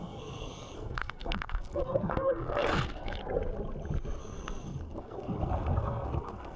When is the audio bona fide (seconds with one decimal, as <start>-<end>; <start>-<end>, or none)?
3.2-4.2